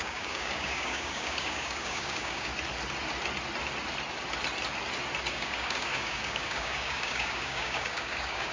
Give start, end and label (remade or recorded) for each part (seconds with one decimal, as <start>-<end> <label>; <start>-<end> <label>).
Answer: 0.0-2.5 remade; 2.5-5.3 recorded; 5.3-8.5 remade